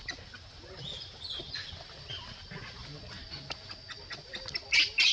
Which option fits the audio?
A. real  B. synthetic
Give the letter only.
A